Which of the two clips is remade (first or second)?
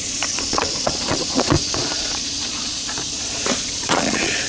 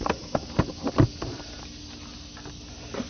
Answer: first